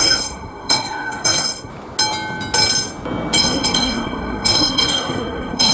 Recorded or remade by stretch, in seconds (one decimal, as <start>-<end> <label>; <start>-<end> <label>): 0.0-1.7 remade; 1.7-3.4 recorded; 3.4-5.7 remade